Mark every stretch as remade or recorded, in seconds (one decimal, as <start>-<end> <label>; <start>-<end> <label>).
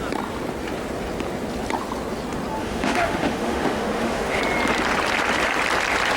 0.0-2.6 recorded; 2.6-4.4 remade; 4.4-6.2 recorded